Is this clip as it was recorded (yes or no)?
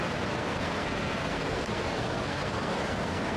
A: no